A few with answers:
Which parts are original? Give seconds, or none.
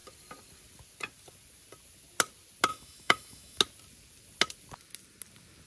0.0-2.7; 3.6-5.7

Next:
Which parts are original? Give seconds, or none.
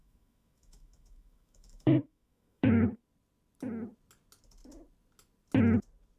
3.0-6.2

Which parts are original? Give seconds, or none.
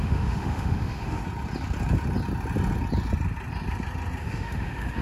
1.2-4.2